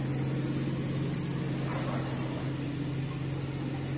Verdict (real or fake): real